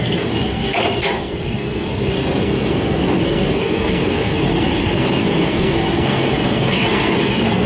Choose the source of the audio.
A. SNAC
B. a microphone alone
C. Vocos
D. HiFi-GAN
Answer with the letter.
A